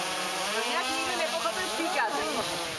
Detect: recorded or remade remade